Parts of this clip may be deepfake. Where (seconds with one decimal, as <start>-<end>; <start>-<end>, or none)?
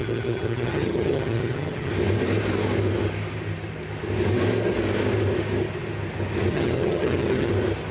0.0-1.9; 6.5-7.5